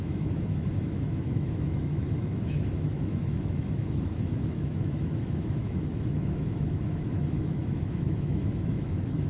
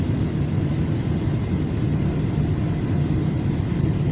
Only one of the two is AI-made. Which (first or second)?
first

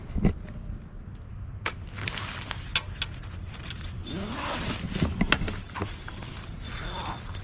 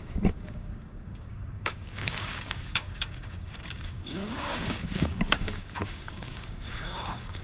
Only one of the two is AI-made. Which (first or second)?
second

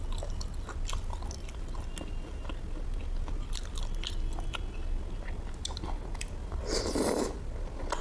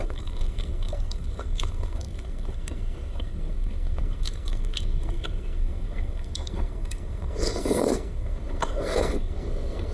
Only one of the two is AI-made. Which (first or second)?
second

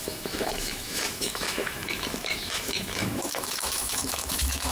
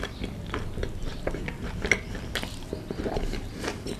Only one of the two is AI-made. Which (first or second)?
first